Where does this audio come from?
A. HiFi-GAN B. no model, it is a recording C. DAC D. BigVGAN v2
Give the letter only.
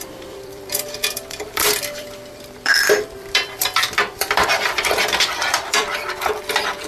D